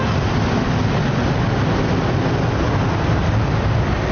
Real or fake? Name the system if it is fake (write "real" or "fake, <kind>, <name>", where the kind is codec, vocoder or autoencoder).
real